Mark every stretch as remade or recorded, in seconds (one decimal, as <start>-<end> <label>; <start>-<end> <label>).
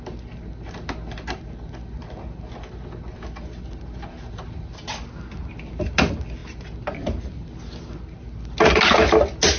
0.0-9.6 recorded